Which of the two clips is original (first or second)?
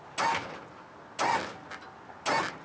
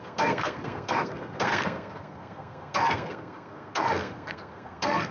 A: first